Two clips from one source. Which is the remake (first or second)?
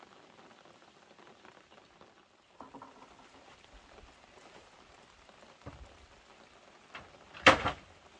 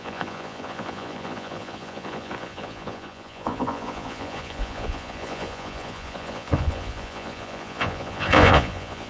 second